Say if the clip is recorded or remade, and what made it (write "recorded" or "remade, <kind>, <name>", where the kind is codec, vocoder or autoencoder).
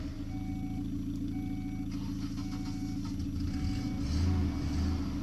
recorded